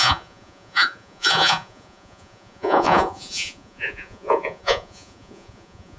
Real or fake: fake